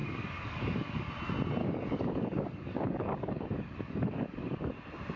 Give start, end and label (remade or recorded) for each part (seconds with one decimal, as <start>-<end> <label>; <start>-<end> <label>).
0.0-1.1 remade; 1.1-1.6 recorded; 1.6-4.7 remade; 4.7-5.2 recorded